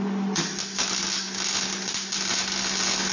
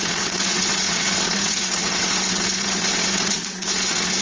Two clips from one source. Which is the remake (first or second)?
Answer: second